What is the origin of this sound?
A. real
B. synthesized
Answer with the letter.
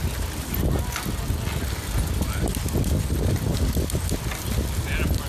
A